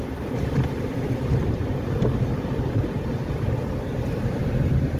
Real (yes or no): no